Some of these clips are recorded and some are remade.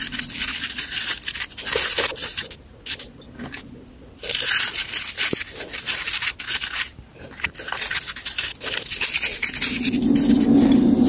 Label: recorded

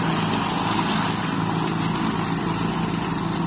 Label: recorded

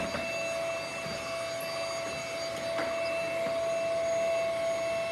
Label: recorded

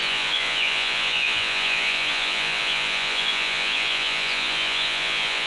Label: remade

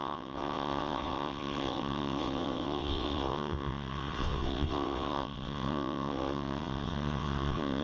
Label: remade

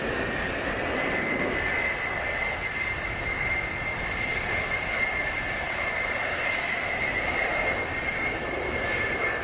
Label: recorded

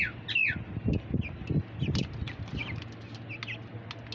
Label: recorded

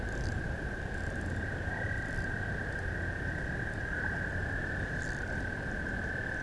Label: recorded